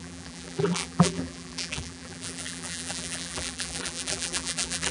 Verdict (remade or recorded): remade